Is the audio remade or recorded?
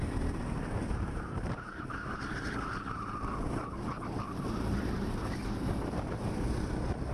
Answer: remade